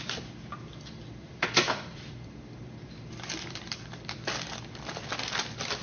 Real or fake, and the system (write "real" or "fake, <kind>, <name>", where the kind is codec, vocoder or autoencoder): fake, vocoder, BigVGAN v2